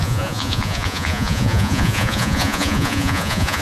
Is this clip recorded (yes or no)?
no